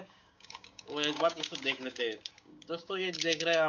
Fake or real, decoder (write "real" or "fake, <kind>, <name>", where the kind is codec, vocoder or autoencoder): fake, codec, DAC